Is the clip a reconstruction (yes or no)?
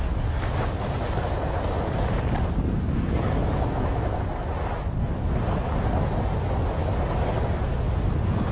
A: no